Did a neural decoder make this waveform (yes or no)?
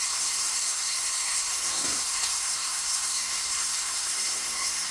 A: yes